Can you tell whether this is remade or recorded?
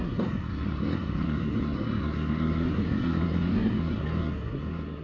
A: remade